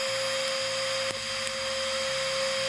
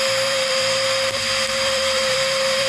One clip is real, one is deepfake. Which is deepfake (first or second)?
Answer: second